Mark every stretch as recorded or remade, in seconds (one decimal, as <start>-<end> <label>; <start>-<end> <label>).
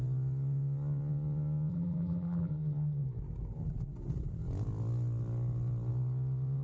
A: 0.0-1.7 recorded; 1.7-2.5 remade; 2.5-6.6 recorded